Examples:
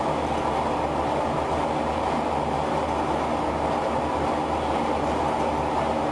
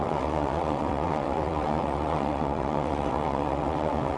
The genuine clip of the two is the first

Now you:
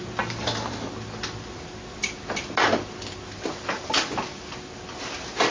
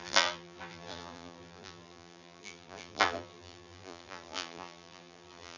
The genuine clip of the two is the first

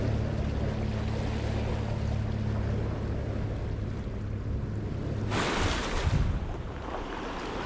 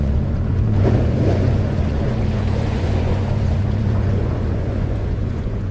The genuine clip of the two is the first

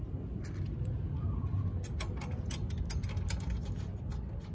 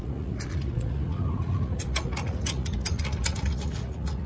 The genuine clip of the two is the first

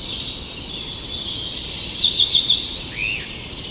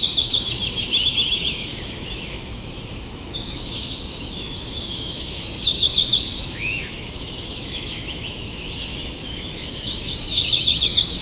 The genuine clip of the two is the first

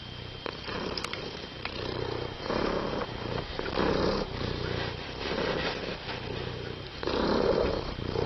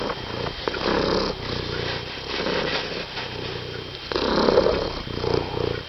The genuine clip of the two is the second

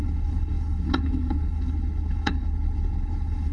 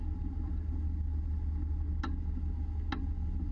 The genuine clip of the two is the second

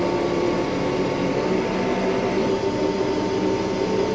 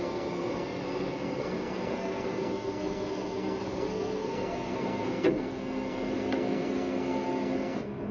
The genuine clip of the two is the first